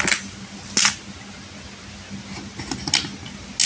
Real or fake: real